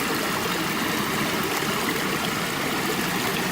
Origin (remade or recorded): recorded